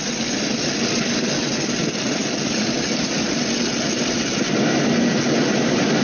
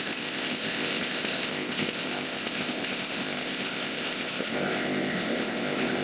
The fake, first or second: second